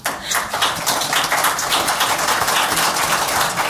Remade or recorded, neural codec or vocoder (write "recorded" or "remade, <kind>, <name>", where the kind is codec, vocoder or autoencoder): recorded